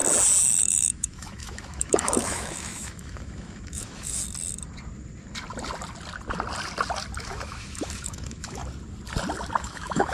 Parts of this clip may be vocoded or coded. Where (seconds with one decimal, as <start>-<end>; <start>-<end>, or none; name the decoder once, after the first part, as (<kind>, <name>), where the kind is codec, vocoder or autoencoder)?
0.6-4.2 (autoencoder, DAC-VAE); 7.2-8.6; 9.6-10.1